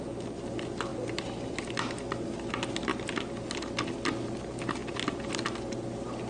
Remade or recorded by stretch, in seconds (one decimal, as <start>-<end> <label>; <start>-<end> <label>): 0.0-6.3 recorded